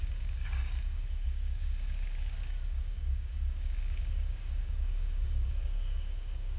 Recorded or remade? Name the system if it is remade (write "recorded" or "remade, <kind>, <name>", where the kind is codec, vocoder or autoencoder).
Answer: remade, codec, DAC